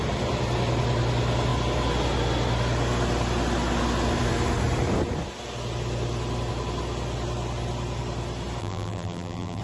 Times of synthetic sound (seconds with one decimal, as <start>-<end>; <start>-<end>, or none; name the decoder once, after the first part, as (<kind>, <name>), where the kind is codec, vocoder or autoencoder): 8.6-9.6 (vocoder, BigVGAN v2)